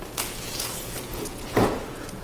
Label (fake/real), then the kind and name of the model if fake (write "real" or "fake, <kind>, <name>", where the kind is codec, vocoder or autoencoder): fake, vocoder, Vocos